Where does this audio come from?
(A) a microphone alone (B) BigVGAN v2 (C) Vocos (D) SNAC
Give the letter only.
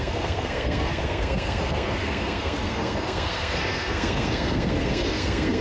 D